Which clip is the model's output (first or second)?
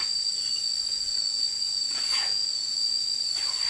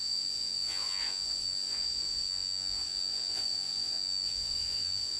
second